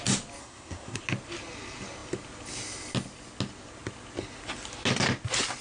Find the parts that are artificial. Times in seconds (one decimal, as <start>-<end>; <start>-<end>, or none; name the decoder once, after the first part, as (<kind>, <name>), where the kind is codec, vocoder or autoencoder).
0.4-1.0 (codec, SNAC)